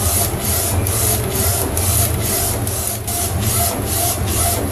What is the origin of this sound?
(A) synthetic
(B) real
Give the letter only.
B